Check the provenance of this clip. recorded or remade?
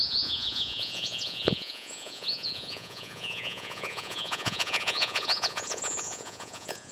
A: remade